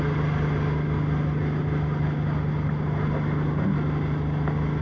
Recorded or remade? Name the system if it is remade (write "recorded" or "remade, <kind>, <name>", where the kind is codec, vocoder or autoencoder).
recorded